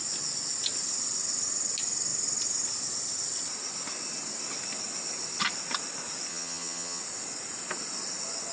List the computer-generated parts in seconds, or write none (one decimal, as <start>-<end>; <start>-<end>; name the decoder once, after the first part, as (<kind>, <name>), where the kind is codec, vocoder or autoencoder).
6.3-7.0 (vocoder, HiFi-GAN)